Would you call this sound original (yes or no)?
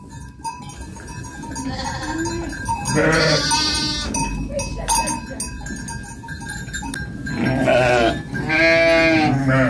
yes